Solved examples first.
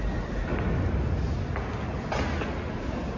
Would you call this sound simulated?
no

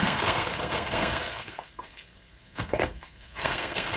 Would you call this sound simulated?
yes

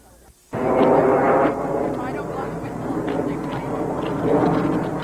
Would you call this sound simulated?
no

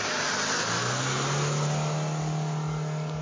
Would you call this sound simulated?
no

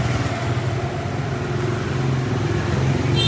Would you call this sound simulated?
no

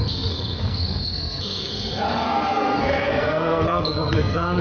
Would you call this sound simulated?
yes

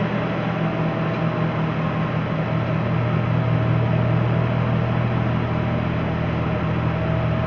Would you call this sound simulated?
no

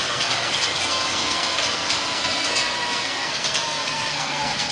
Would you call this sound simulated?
yes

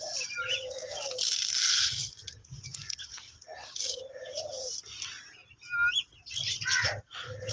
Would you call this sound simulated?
no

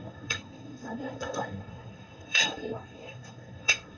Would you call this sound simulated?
yes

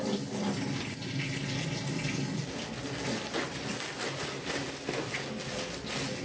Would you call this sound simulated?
no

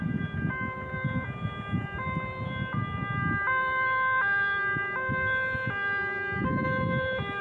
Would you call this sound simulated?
no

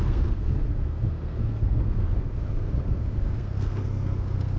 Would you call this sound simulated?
yes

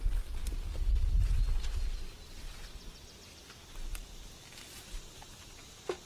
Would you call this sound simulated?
no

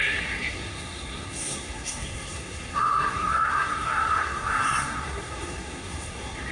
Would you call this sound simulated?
yes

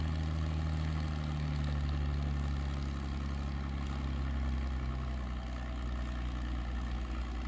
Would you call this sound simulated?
no